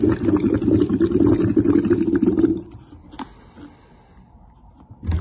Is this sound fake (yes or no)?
no